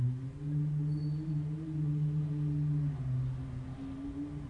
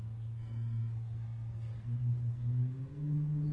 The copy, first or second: second